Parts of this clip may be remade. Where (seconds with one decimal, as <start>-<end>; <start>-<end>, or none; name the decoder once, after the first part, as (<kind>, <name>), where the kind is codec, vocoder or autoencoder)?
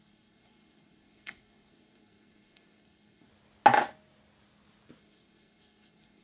0.0-3.3 (codec, SNAC); 5.0-6.2